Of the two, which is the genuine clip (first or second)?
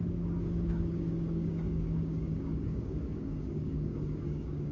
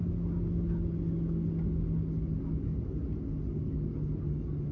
second